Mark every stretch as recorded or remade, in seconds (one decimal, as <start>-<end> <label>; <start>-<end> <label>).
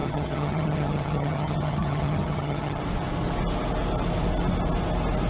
0.0-2.8 remade; 2.8-5.3 recorded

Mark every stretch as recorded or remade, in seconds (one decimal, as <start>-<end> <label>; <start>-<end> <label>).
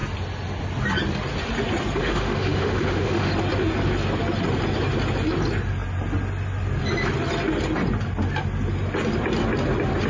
0.0-2.0 recorded; 2.0-3.3 remade; 3.3-10.1 recorded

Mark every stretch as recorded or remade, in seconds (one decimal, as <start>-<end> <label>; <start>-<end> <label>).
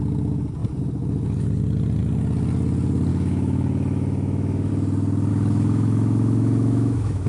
0.0-3.1 recorded; 3.1-4.7 remade; 4.7-5.3 recorded; 5.3-7.3 remade